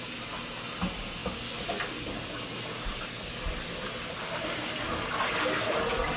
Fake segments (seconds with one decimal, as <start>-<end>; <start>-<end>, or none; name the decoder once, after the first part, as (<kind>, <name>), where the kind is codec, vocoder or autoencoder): none